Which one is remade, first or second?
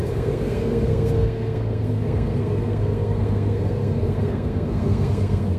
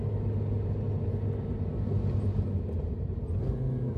first